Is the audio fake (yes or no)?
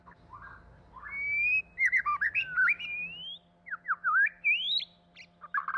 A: no